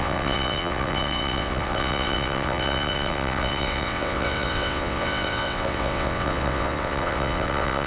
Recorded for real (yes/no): no